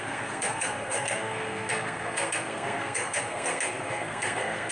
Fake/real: fake